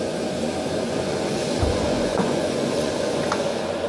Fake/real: fake